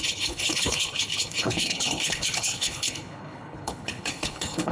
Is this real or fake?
fake